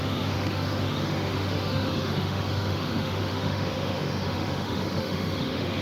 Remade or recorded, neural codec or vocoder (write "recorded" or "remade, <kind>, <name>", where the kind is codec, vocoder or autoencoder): remade, autoencoder, DAC-VAE